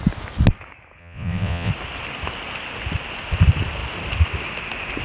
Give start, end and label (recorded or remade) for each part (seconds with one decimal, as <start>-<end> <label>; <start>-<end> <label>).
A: 0.0-1.0 recorded; 1.0-1.7 remade; 1.7-5.0 recorded